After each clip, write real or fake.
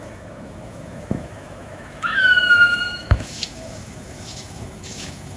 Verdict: fake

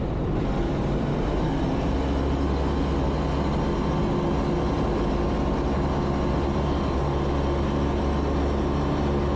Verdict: real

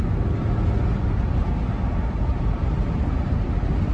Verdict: real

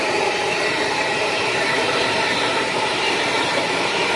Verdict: fake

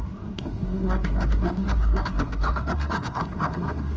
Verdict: fake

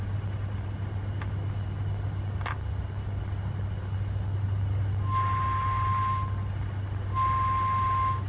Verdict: real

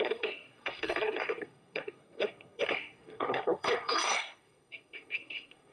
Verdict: fake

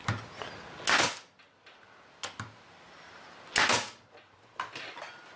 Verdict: real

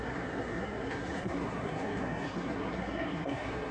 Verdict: fake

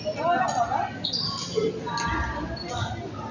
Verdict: real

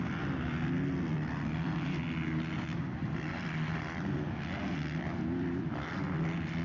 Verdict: real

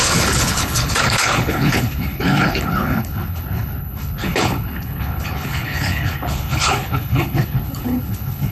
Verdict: fake